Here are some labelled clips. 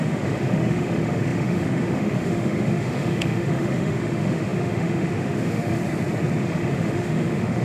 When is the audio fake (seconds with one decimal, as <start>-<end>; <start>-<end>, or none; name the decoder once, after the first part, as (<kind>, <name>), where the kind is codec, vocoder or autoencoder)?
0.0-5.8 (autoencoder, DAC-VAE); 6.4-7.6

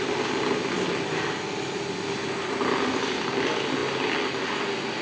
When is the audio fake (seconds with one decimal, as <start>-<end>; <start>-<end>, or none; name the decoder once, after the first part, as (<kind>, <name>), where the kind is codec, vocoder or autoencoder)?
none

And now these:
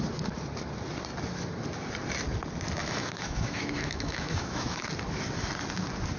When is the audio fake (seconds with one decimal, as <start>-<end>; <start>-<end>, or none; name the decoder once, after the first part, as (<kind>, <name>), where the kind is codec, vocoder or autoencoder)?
2.8-4.8 (autoencoder, DAC-VAE)

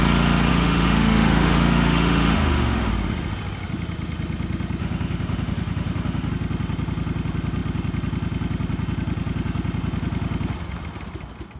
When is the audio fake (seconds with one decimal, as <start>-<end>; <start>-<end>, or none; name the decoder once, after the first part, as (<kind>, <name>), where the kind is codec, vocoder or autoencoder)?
0.5-2.9 (autoencoder, DAC-VAE); 4.8-6.3

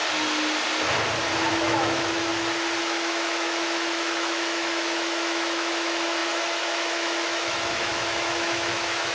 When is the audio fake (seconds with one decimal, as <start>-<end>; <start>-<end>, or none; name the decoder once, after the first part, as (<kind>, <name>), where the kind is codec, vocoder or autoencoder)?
1.5-2.3 (autoencoder, DAC-VAE); 2.8-9.1

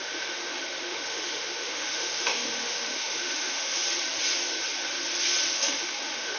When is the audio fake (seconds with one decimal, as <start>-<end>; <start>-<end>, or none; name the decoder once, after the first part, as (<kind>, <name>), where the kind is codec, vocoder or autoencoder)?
0.0-3.8 (autoencoder, DAC-VAE); 5.5-6.4

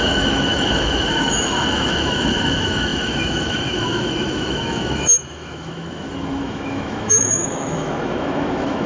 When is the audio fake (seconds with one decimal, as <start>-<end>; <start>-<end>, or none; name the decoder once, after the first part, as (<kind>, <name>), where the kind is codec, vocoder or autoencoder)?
0.0-8.9 (autoencoder, DAC-VAE)

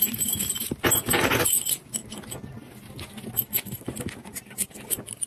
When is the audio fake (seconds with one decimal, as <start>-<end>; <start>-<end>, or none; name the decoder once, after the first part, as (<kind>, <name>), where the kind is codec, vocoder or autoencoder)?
none